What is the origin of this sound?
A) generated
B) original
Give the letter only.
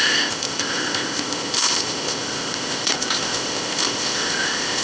A